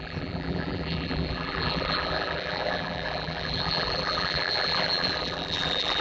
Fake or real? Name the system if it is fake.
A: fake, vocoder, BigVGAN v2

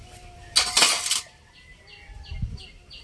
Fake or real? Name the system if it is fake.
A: real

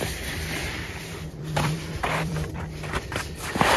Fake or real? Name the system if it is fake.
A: fake, vocoder, BigVGAN v2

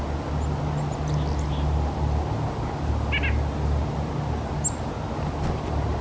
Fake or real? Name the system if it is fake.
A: real